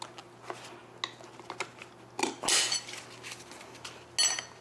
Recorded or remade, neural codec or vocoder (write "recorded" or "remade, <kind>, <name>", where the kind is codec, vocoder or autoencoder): recorded